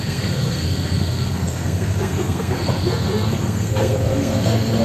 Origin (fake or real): fake